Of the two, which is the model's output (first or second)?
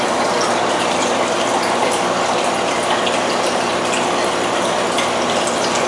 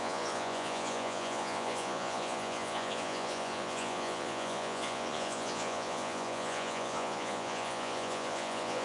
second